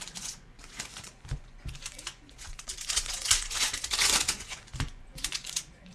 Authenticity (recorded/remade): remade